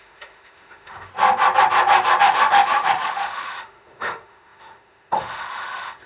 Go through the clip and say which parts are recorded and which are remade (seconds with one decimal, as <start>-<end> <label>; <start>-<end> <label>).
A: 0.0-1.1 remade; 1.1-2.2 recorded; 2.2-6.1 remade